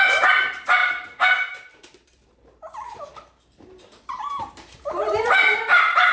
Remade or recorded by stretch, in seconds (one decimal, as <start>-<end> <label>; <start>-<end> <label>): 0.0-6.1 remade